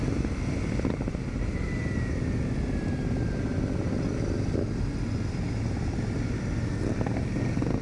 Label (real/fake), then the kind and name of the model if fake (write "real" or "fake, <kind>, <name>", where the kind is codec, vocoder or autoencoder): real